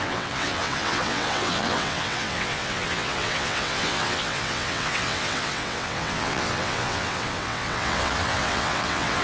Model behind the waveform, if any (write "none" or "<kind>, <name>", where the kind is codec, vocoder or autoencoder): vocoder, WaveNeXt